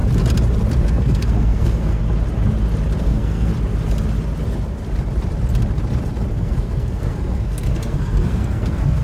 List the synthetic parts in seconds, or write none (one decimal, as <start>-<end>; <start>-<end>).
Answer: 0.8-2.0; 3.0-3.5; 6.3-9.0